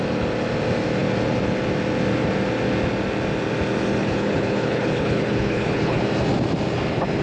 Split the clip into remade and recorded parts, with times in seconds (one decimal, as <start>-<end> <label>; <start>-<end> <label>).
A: 0.0-4.0 recorded; 4.0-6.0 remade; 6.0-7.2 recorded